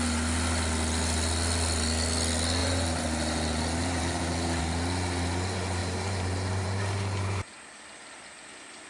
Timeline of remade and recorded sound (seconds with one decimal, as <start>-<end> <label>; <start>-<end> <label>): 0.0-2.6 recorded; 2.6-4.6 remade; 4.6-5.8 recorded; 5.8-7.7 remade; 7.7-8.9 recorded